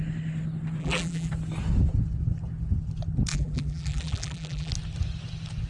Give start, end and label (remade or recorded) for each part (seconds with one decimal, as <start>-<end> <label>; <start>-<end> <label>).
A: 0.0-0.8 recorded; 0.8-1.3 remade; 1.3-3.3 recorded; 3.3-4.7 remade; 4.7-5.7 recorded